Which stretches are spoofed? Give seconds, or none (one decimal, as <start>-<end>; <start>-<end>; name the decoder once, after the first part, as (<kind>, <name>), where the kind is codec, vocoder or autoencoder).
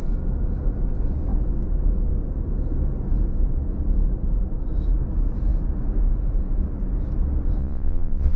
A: 7.6-8.4 (vocoder, Vocos)